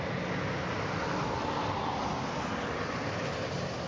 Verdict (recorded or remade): recorded